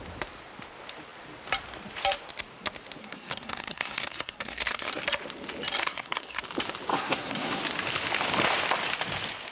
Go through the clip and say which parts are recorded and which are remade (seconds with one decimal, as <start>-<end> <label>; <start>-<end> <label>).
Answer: 0.0-3.0 recorded; 3.0-5.0 remade; 5.0-5.8 recorded; 5.8-6.4 remade; 6.4-6.9 recorded; 6.9-7.6 remade; 7.6-9.5 recorded